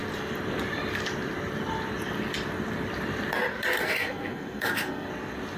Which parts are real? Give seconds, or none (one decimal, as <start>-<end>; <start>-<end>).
0.0-3.8; 5.1-5.6